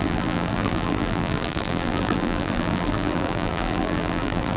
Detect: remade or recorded remade